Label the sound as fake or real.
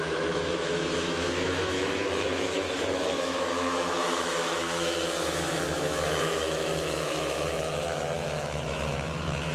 fake